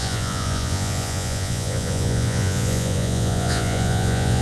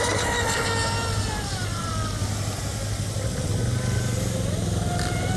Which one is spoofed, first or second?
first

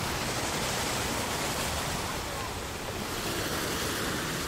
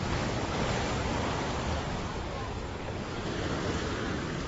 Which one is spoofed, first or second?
second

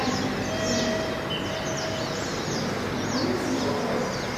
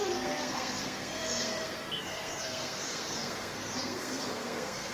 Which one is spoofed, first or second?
second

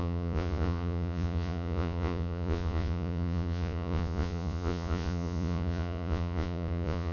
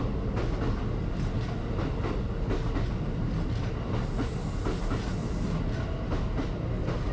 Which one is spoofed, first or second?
first